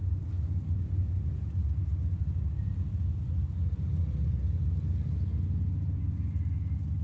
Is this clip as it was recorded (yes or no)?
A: yes